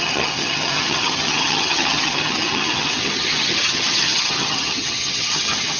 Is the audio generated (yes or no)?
yes